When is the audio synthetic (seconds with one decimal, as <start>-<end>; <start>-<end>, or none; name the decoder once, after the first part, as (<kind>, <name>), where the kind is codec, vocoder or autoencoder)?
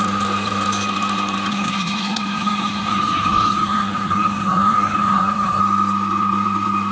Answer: 1.5-5.6 (codec, SNAC)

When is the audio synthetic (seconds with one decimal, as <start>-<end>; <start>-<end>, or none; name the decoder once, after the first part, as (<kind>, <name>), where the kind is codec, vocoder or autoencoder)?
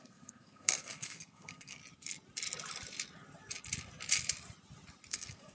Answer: 0.0-1.8 (codec, SNAC); 5.1-5.5